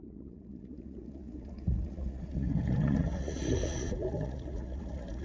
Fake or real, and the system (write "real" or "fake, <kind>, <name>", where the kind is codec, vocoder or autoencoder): fake, vocoder, Vocos